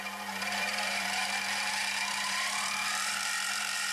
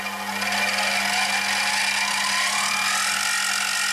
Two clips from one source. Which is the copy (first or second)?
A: first